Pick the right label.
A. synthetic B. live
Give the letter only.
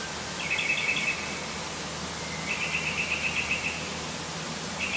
B